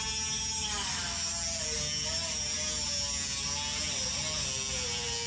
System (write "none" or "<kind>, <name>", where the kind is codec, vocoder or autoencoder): none